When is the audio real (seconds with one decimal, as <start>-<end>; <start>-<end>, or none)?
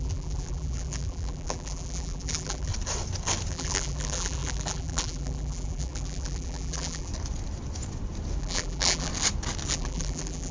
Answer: 2.7-3.5; 7.1-8.4; 9.1-9.7